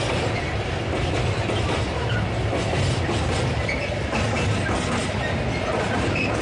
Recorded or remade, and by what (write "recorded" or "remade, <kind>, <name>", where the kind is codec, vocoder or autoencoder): recorded